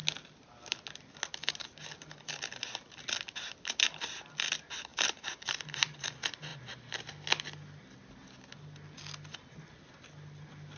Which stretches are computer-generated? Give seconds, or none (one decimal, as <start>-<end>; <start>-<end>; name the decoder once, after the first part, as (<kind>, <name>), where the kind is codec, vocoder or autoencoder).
4.9-5.5 (vocoder, BigVGAN v2)